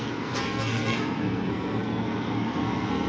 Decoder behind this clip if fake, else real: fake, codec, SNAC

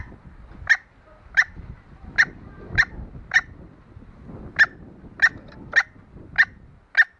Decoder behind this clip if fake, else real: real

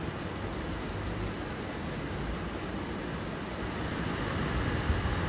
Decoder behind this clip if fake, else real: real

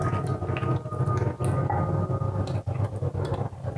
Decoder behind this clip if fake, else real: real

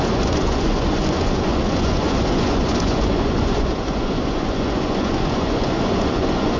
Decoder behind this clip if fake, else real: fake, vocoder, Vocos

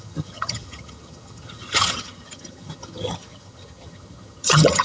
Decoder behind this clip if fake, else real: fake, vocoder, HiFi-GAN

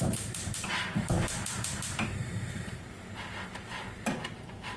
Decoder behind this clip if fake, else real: fake, vocoder, BigVGAN v2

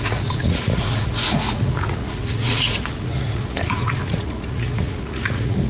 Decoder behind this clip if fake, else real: fake, vocoder, Vocos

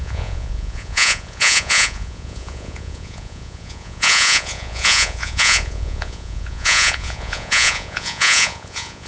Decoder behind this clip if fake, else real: fake, vocoder, Vocos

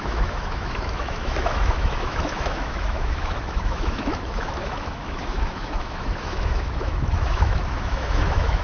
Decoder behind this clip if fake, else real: fake, autoencoder, DAC-VAE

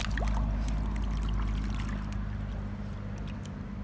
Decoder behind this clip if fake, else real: real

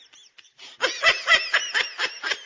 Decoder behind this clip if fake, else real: real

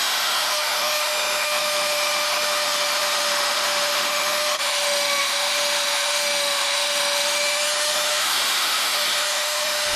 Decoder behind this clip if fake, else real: fake, autoencoder, DAC-VAE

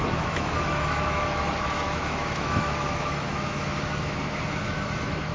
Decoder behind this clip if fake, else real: fake, autoencoder, DAC-VAE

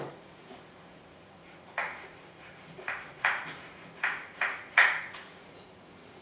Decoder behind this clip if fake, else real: fake, vocoder, Vocos